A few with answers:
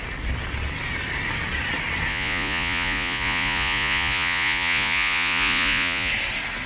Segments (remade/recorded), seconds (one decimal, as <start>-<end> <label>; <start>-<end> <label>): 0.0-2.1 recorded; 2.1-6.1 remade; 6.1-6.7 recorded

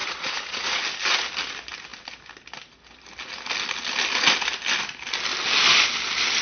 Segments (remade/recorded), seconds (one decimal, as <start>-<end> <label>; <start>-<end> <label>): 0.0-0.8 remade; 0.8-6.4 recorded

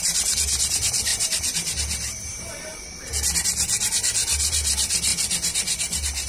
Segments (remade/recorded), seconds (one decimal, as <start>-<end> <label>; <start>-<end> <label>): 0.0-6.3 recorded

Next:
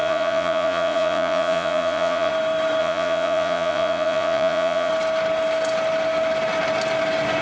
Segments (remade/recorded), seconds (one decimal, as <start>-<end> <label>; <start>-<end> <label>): 0.0-2.3 remade; 2.3-2.8 recorded; 2.8-4.9 remade; 4.9-7.4 recorded